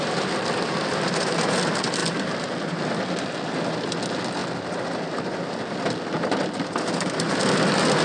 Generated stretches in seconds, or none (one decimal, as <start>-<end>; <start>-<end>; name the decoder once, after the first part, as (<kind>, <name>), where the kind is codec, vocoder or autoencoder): none